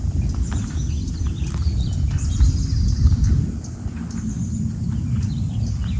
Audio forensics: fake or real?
real